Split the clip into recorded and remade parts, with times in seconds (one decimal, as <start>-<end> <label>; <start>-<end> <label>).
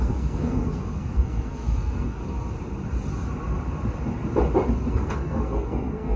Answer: 0.0-2.2 remade; 2.2-4.9 recorded; 4.9-6.2 remade